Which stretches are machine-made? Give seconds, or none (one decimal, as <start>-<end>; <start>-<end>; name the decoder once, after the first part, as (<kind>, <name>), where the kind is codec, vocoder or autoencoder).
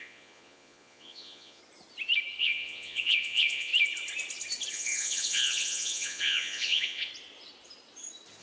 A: 0.0-1.6 (vocoder, Vocos); 2.4-3.7; 4.7-7.1